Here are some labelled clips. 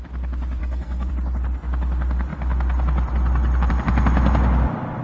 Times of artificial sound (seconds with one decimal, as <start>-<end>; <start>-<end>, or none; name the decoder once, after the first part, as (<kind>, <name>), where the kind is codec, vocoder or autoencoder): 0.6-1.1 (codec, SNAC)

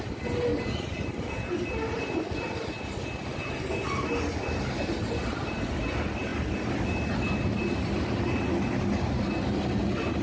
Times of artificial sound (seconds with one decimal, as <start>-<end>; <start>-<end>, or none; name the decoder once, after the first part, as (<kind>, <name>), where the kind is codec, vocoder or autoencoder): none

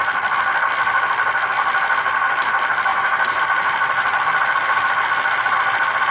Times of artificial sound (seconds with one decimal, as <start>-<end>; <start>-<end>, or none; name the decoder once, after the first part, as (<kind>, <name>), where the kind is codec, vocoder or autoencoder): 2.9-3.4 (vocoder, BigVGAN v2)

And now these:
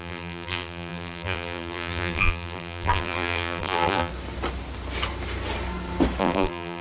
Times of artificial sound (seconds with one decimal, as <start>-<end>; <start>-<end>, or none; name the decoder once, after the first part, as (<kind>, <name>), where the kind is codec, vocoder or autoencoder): 0.0-4.1 (vocoder, BigVGAN v2); 6.2-6.8

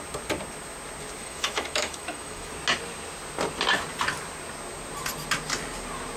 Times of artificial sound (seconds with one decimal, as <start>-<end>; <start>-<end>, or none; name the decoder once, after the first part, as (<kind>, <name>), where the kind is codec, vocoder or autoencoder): 1.2-2.5 (autoencoder, DAC-VAE)